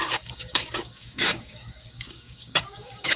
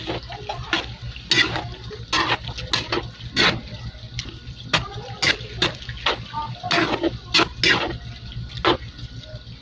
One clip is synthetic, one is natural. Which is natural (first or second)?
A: second